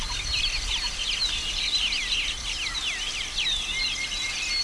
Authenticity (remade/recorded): recorded